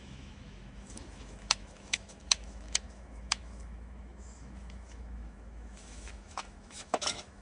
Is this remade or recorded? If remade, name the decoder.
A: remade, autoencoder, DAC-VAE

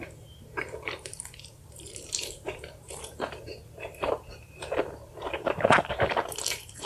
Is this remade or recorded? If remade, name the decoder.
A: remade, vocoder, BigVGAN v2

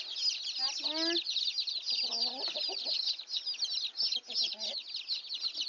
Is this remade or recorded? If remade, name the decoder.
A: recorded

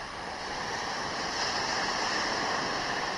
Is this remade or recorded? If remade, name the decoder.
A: recorded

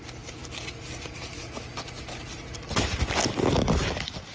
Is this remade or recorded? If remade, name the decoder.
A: recorded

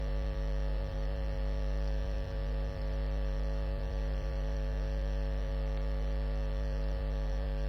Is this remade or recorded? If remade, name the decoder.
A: remade, vocoder, BigVGAN v2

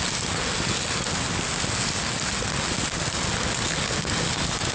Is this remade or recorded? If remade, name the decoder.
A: recorded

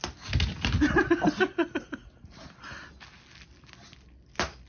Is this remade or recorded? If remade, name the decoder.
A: recorded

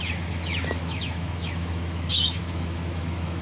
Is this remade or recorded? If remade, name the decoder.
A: remade, autoencoder, DAC-VAE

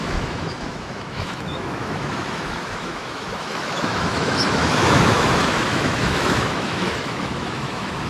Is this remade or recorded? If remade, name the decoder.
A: remade, autoencoder, DAC-VAE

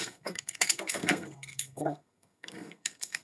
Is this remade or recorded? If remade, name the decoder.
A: remade, codec, SNAC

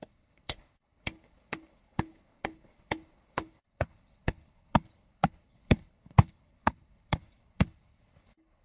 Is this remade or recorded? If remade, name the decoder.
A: remade, codec, HILCodec